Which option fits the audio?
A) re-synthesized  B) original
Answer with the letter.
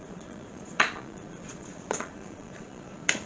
A